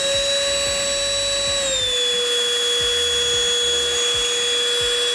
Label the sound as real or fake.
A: real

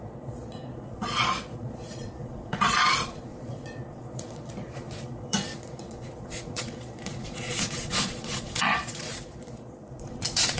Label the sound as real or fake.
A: fake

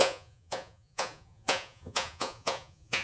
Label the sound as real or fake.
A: fake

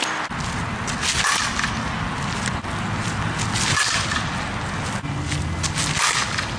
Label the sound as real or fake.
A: real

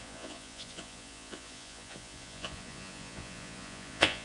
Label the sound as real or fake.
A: fake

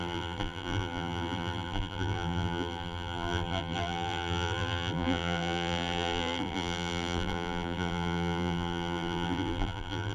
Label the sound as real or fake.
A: fake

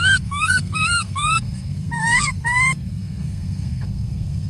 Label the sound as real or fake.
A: fake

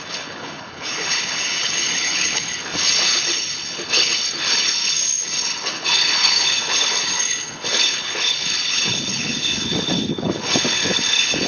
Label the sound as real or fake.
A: fake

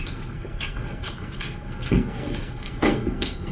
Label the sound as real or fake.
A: fake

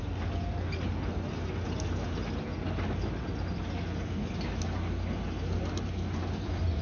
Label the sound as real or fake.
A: real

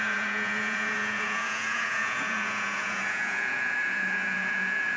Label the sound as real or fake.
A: fake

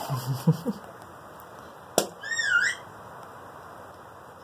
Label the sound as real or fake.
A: real